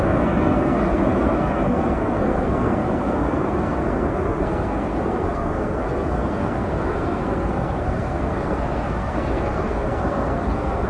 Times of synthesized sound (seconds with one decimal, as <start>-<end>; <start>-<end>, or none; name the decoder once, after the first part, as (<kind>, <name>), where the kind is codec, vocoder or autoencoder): 0.0-10.9 (codec, SNAC)

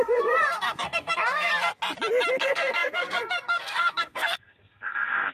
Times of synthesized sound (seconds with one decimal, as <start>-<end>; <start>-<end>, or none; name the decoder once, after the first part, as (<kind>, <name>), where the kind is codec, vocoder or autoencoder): 0.0-1.5 (codec, SNAC); 2.3-5.3

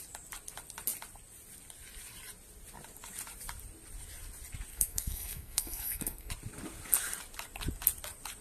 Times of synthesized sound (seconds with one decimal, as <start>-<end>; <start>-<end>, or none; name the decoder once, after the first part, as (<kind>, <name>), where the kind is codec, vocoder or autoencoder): 4.7-6.3 (codec, SNAC)

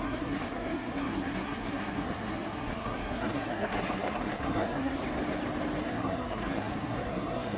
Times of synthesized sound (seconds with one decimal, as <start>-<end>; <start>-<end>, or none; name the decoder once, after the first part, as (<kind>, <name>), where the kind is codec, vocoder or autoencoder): 0.0-5.0 (codec, SNAC); 5.8-7.6

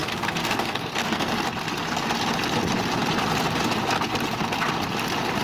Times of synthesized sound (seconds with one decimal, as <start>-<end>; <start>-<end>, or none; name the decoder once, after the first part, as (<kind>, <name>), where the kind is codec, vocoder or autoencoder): 0.0-1.3 (codec, SNAC)

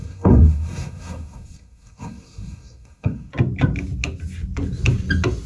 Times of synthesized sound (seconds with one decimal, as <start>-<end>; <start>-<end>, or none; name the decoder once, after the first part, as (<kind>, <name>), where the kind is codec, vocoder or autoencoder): 0.0-3.3 (codec, SNAC)

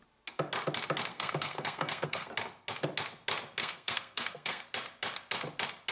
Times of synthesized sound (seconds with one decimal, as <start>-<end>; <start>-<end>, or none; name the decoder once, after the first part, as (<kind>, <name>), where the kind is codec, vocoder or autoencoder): 1.1-2.3 (codec, SNAC); 3.6-4.6